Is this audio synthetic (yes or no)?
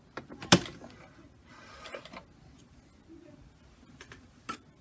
no